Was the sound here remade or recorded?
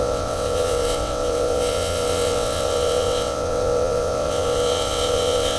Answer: remade